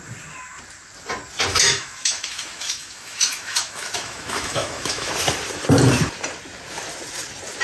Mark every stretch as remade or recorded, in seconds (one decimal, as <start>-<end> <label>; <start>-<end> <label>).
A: 0.0-1.5 recorded; 1.5-5.1 remade; 5.1-7.6 recorded